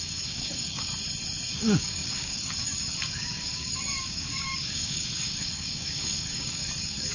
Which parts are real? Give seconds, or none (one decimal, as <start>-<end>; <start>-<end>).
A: 0.9-1.5